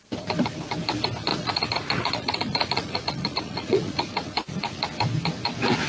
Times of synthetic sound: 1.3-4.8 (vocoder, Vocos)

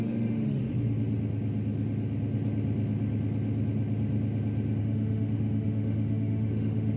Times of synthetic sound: 0.0-0.6 (autoencoder, DAC-VAE); 4.8-7.0